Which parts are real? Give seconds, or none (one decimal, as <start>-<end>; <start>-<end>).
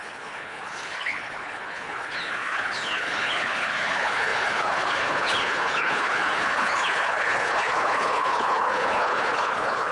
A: none